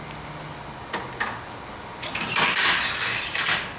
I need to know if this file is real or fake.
real